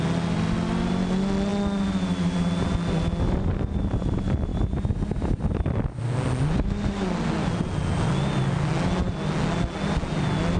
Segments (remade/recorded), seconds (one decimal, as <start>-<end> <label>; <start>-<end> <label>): 0.0-10.6 recorded